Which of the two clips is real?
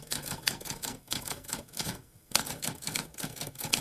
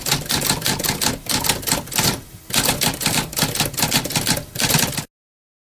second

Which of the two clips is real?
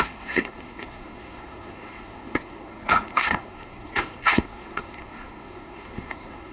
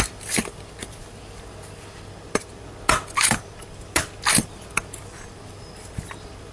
second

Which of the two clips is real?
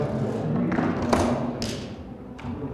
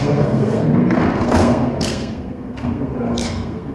first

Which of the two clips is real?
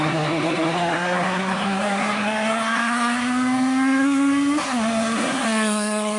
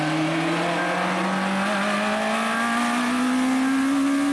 second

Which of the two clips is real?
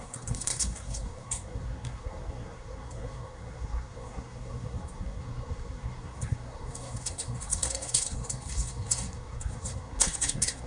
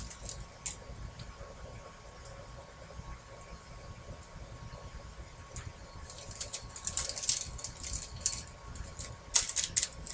second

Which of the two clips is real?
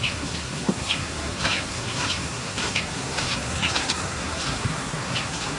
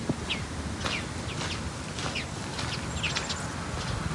second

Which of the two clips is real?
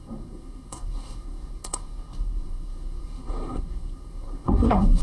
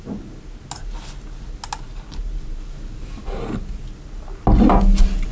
second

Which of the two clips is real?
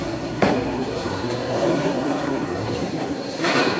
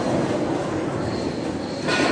second